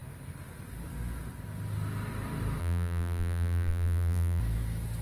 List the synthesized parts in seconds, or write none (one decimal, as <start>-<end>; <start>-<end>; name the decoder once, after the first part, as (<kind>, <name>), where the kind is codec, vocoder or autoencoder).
2.6-4.4 (vocoder, BigVGAN v2)